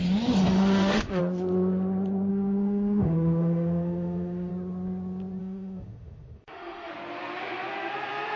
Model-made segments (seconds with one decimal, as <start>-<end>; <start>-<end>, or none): 0.4-1.2; 2.3-4.5; 5.4-6.9